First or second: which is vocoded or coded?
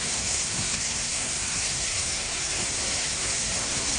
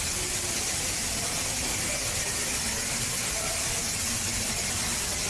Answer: first